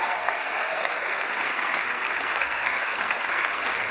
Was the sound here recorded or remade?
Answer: remade